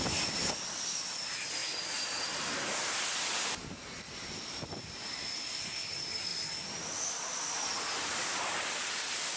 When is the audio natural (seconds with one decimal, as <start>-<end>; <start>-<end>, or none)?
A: 0.0-9.4